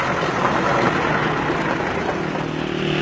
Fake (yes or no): no